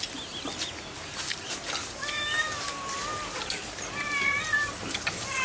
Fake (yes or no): no